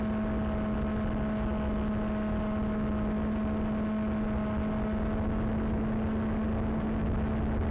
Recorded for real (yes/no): yes